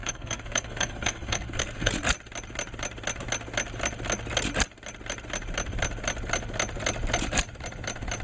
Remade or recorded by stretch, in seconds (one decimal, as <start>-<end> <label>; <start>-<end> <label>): 0.0-1.9 remade; 1.9-8.2 recorded

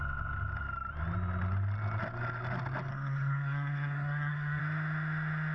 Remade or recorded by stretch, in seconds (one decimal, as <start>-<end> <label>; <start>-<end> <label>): 0.0-2.9 recorded; 2.9-4.6 remade; 4.6-5.5 recorded

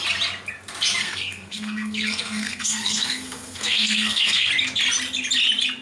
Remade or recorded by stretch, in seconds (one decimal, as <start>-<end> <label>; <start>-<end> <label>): 0.0-1.0 recorded; 1.0-4.5 remade; 4.5-5.8 recorded

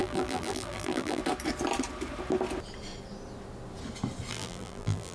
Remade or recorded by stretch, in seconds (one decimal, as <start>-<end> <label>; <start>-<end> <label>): 0.0-1.2 remade; 1.2-4.3 recorded; 4.3-5.1 remade

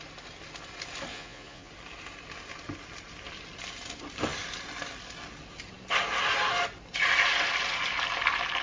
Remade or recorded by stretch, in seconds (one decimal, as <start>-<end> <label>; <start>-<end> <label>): 0.0-1.1 recorded; 1.1-1.7 remade; 1.7-8.6 recorded